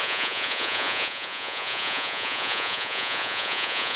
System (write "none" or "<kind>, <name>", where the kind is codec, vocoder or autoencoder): vocoder, Vocos